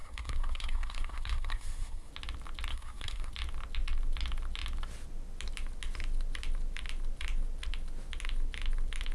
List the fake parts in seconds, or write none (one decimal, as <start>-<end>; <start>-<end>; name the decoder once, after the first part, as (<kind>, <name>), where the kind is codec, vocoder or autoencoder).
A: 0.0-2.1 (codec, SNAC); 2.7-3.3